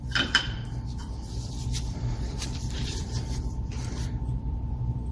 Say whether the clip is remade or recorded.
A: remade